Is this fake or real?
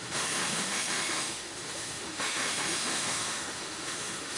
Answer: fake